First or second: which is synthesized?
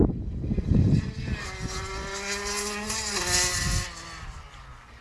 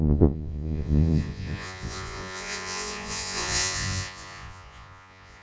second